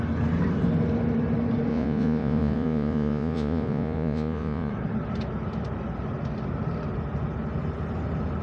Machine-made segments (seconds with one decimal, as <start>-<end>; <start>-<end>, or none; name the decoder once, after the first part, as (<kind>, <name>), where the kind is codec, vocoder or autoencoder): 1.7-4.7 (vocoder, Vocos)